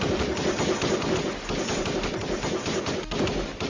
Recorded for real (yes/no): yes